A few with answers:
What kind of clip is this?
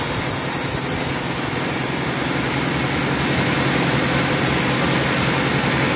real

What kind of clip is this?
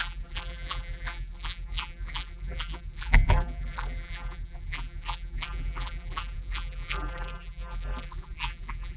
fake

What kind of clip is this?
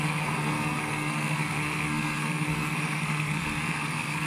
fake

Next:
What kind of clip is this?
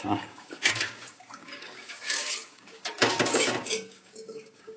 fake